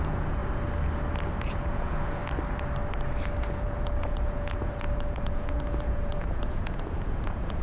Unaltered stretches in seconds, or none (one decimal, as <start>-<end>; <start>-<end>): 0.4-1.4; 2.2-3.5